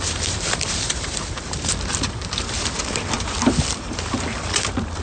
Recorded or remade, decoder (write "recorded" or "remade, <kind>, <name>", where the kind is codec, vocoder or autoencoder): remade, vocoder, BigVGAN v2